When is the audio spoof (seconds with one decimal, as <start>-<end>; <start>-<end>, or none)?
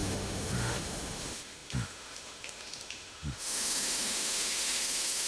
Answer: 0.0-5.3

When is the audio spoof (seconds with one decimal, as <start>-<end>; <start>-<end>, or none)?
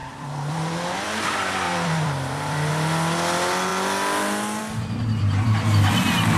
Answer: 0.0-2.7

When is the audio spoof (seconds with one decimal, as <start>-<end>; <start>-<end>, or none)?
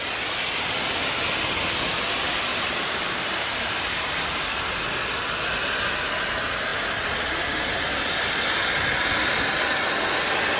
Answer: 2.5-4.9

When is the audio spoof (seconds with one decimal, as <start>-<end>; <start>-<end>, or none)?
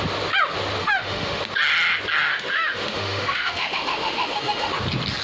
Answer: 0.8-1.4; 2.3-4.7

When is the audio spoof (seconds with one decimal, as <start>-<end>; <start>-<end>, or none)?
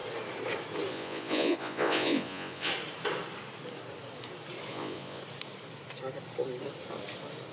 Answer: 0.9-2.7; 4.7-5.2